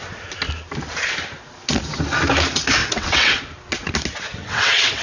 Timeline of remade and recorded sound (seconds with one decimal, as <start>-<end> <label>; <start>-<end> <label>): 0.0-2.8 recorded; 2.8-3.4 remade; 3.4-4.4 recorded; 4.4-5.0 remade

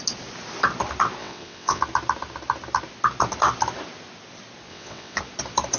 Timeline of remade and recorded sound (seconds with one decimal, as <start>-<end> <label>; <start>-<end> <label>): 0.0-1.2 recorded; 1.2-1.8 remade; 1.8-4.7 recorded; 4.7-5.2 remade; 5.2-5.8 recorded

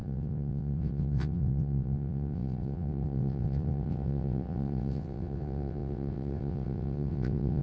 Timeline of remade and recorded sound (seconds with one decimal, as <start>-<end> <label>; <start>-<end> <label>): 0.0-7.6 remade

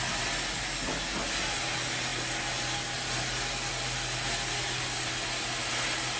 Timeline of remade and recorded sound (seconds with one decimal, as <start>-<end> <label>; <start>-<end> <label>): 0.0-6.2 recorded

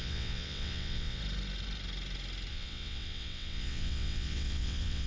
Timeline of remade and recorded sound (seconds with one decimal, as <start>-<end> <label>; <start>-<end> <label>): 0.0-1.2 remade; 1.2-2.5 recorded; 2.5-5.1 remade